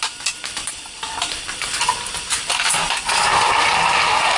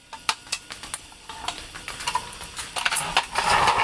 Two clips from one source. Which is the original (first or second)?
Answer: second